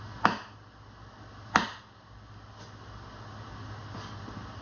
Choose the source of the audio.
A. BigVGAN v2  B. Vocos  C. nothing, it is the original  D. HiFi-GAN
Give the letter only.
C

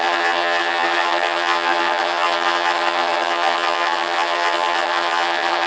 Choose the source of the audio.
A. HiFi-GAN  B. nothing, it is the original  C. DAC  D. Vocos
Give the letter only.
A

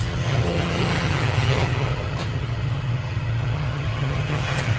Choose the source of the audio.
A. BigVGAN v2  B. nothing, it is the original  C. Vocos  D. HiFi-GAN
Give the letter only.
D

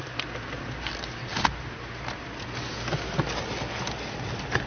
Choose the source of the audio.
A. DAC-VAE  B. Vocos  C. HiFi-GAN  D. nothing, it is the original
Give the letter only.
D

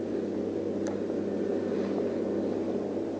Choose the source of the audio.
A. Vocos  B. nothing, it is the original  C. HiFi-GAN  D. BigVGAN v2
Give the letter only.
B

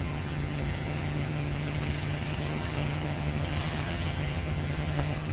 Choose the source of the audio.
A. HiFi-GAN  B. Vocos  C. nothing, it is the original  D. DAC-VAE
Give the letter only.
A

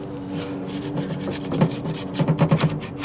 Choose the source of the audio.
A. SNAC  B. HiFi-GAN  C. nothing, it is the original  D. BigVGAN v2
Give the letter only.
C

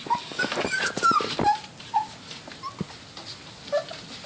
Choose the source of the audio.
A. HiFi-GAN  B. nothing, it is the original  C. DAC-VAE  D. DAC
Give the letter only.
B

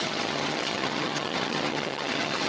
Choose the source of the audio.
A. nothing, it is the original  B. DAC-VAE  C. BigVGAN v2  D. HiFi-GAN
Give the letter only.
D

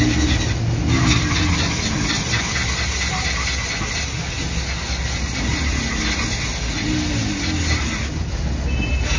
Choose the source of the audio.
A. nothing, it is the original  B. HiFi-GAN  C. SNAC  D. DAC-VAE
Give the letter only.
A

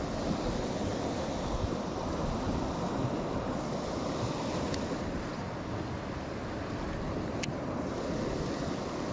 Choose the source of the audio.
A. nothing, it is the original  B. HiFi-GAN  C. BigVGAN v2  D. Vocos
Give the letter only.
A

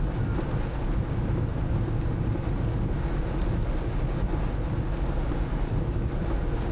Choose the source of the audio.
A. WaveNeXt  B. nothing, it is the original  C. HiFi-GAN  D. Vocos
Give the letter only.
B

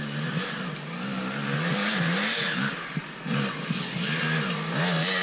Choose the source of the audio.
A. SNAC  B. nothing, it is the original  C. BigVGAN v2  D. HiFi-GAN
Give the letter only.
B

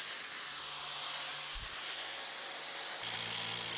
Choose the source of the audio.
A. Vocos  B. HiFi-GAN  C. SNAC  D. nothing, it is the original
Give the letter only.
D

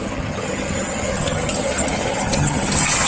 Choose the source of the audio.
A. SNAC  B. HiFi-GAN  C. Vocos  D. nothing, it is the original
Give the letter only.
B